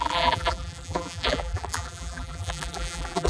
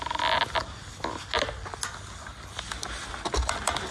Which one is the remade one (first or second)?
first